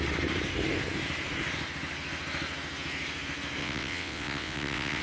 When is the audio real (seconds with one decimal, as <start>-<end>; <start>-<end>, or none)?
0.0-3.6